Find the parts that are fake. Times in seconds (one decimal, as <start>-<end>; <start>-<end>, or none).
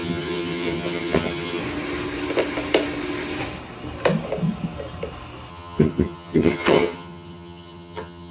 0.0-1.6; 5.5-8.3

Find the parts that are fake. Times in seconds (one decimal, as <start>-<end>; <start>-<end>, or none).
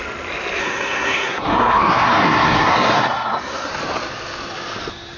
0.6-3.7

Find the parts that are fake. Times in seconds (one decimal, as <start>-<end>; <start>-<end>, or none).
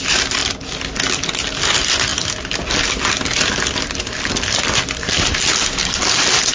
none